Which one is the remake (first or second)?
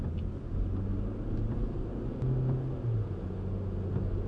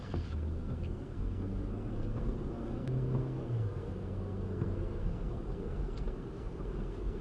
second